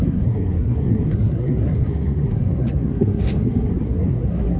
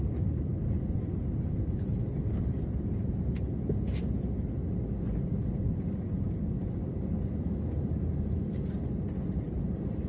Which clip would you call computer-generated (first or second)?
first